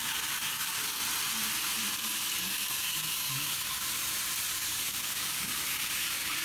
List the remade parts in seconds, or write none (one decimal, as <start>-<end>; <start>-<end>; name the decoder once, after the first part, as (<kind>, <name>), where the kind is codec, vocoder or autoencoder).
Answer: 0.0-1.0 (codec, DAC); 1.9-4.0; 4.5-6.4